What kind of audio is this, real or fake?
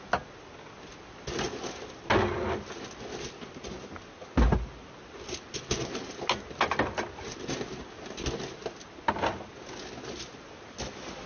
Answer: real